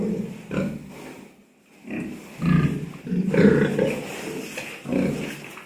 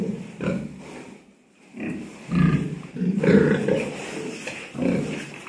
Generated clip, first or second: second